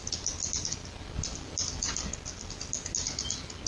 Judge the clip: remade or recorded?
recorded